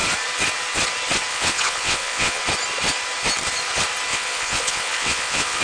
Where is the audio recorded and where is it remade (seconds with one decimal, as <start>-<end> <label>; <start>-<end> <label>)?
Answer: 0.0-1.3 recorded; 1.3-2.4 remade; 2.4-4.1 recorded; 4.1-5.6 remade